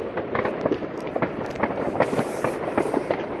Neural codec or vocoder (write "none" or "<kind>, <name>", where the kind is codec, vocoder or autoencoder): vocoder, BigVGAN v2